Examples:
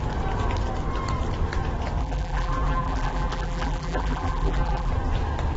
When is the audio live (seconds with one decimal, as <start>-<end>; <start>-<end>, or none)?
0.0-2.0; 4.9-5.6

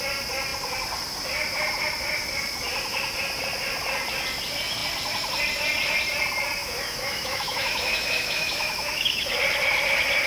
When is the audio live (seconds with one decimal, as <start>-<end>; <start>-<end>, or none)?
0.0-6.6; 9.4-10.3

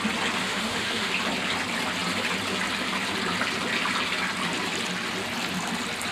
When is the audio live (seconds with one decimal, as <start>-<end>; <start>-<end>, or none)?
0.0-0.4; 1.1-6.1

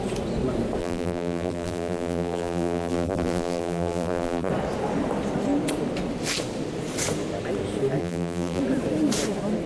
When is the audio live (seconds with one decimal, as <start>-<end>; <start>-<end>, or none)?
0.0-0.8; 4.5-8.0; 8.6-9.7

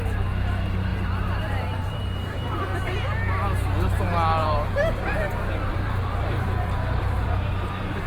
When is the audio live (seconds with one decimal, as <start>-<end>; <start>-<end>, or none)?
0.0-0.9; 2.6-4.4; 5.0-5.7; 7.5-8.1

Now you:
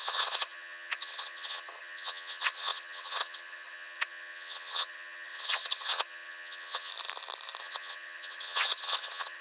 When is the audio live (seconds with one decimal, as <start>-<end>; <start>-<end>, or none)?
6.9-7.6